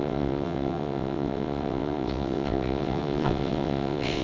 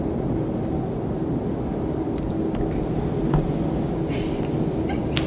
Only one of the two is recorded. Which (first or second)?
second